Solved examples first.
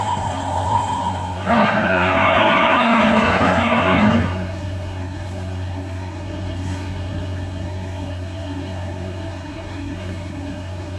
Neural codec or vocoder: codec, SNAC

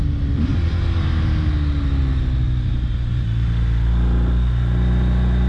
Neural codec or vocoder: none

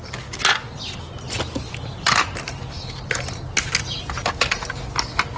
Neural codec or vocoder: none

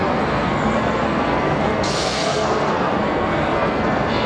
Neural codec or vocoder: codec, SNAC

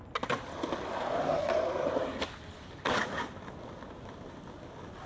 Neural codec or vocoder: none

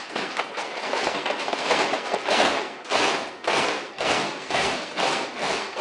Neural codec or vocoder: codec, SNAC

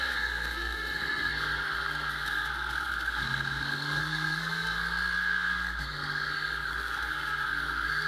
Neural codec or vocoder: codec, SNAC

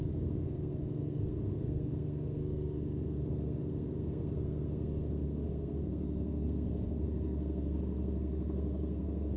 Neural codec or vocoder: codec, SNAC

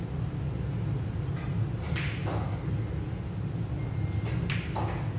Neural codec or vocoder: none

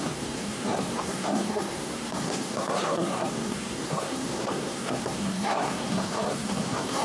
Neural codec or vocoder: codec, SNAC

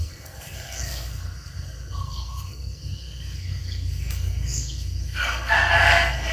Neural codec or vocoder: codec, SNAC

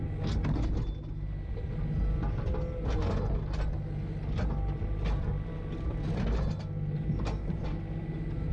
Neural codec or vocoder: none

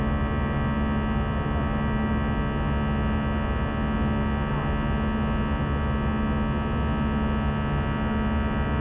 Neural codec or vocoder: none